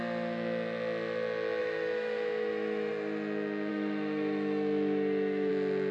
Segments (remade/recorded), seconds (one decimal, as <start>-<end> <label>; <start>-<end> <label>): 0.0-1.6 recorded; 1.6-2.9 remade; 2.9-3.7 recorded; 3.7-5.5 remade; 5.5-5.9 recorded